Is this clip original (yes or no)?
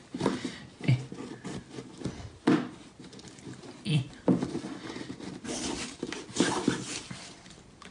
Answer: yes